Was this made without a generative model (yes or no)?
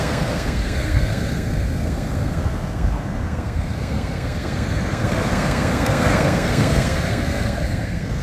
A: no